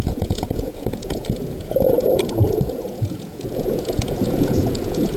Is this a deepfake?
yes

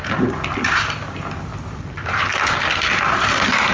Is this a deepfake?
no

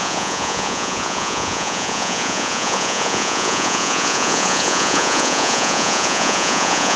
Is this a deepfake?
yes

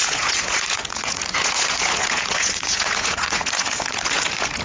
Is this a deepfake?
yes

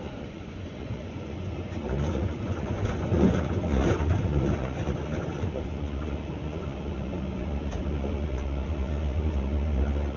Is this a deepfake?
yes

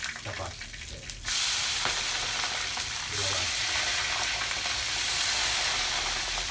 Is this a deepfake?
no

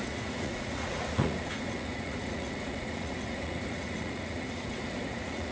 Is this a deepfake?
yes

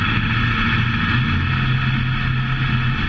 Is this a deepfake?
no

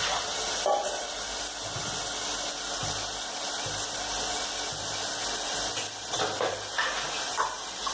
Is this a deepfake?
no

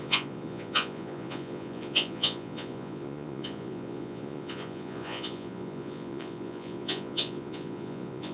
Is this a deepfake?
yes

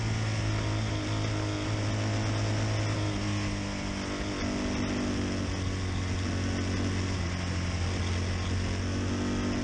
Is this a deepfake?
no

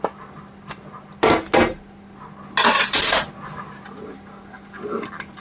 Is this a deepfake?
no